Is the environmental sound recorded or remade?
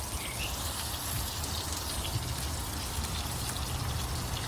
recorded